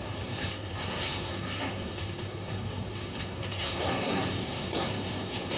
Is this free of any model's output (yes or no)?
no